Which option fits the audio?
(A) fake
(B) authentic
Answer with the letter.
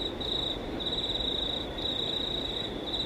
B